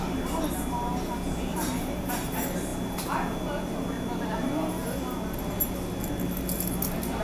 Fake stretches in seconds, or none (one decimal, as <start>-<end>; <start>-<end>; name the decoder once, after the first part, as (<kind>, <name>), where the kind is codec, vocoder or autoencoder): 1.5-2.1 (vocoder, BigVGAN v2)

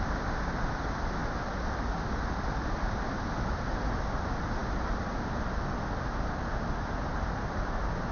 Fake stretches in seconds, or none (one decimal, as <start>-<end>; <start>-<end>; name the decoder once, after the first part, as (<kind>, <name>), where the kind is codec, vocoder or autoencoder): 1.2-2.0 (vocoder, BigVGAN v2); 4.6-5.3

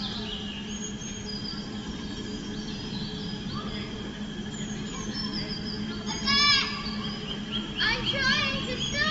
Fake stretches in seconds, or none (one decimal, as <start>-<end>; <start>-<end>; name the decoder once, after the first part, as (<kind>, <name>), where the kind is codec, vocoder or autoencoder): none

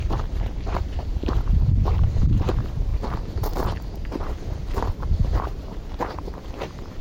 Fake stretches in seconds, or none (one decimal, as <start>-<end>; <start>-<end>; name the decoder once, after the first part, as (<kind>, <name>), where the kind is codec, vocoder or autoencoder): 0.0-7.0 (vocoder, BigVGAN v2)

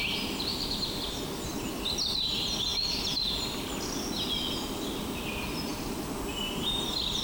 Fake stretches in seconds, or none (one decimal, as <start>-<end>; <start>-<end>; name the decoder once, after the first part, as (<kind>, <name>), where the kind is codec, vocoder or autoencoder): 0.5-1.2 (vocoder, BigVGAN v2)

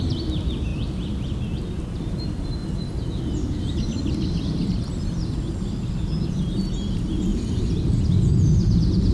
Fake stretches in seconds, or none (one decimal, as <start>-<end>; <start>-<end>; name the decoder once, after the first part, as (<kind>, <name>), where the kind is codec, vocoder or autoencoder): 0.7-1.8 (vocoder, BigVGAN v2); 2.6-4.9; 7.3-8.0

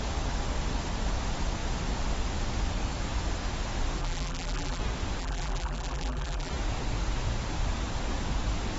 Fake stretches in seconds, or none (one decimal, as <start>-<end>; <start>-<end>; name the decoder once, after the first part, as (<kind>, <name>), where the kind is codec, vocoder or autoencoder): 4.0-4.8 (vocoder, BigVGAN v2); 5.2-6.5

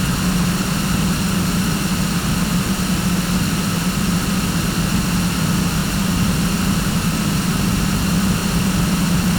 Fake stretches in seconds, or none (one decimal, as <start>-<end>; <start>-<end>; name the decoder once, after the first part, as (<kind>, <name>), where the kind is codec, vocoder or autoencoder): 5.8-7.9 (vocoder, BigVGAN v2); 8.4-9.4